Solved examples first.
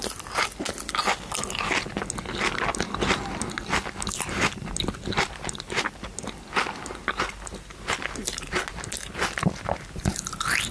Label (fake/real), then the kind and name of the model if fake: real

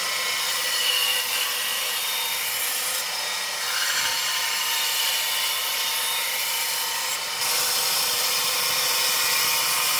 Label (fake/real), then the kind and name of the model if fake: real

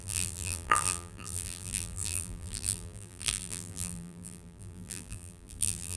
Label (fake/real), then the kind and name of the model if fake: fake, vocoder, BigVGAN v2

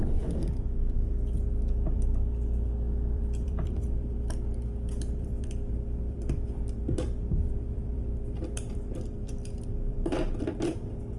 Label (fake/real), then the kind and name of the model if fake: fake, vocoder, BigVGAN v2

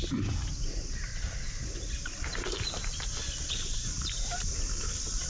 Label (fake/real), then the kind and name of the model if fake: fake, vocoder, BigVGAN v2